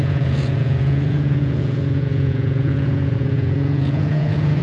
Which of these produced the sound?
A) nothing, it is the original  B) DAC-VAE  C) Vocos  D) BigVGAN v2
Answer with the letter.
C